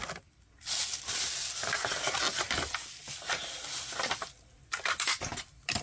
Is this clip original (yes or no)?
yes